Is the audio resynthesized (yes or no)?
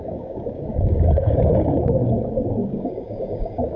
yes